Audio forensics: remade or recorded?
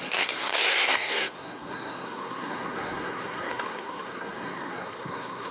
remade